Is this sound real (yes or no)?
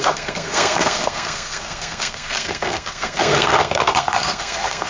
no